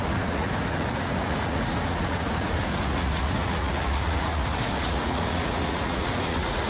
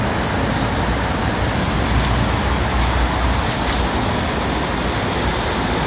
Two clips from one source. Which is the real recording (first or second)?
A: second